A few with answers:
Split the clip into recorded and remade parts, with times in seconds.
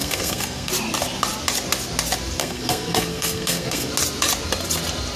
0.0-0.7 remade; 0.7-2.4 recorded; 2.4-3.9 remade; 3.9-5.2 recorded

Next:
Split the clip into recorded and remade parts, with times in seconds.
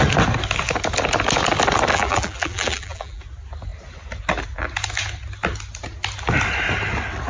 0.0-1.9 recorded; 1.9-3.2 remade; 3.2-7.3 recorded